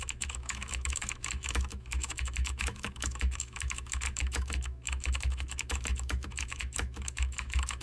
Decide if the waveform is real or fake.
fake